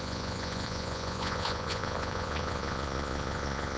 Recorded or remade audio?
remade